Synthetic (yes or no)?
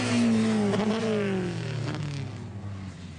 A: no